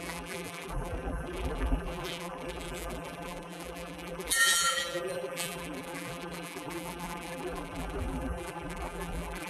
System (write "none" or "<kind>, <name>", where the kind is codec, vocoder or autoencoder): vocoder, BigVGAN v2